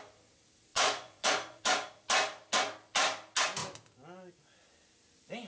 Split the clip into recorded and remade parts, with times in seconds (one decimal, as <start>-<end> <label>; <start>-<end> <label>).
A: 0.0-0.7 recorded; 0.7-1.6 remade; 1.6-5.5 recorded